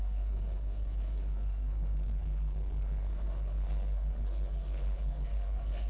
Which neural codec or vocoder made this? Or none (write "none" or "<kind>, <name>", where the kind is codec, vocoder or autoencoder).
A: codec, SNAC